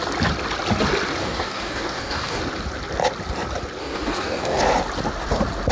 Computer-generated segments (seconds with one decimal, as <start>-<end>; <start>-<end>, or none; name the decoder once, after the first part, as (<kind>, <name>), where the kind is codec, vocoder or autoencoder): 1.2-2.4 (codec, DAC); 3.8-4.6